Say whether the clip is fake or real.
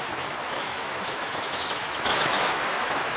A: fake